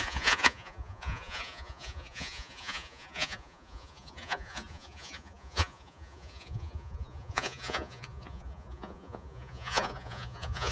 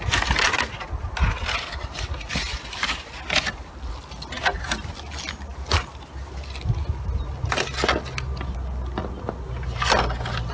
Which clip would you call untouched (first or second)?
second